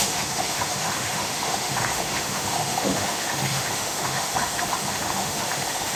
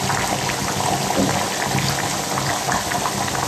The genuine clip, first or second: second